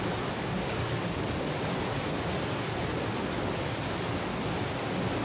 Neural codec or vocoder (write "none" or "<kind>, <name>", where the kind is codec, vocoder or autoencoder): none